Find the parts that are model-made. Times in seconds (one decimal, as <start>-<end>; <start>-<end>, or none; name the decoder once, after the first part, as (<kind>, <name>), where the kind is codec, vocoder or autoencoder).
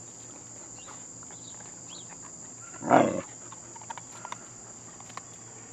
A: none